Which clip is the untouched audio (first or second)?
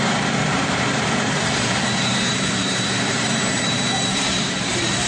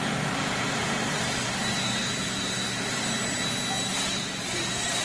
second